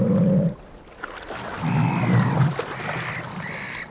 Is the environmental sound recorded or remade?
recorded